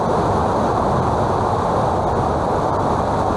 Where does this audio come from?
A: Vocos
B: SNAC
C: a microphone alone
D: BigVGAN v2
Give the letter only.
C